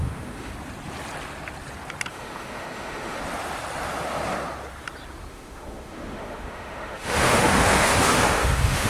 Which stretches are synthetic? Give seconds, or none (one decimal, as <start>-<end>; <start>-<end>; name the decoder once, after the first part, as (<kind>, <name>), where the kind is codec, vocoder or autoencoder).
0.0-0.5 (autoencoder, DAC-VAE); 2.1-3.2; 5.3-8.9